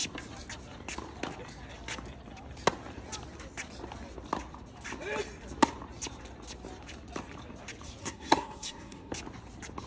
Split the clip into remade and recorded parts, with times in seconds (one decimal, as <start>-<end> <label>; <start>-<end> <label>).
0.0-8.0 recorded; 8.0-9.1 remade; 9.1-9.9 recorded